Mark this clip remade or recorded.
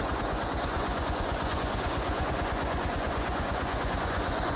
remade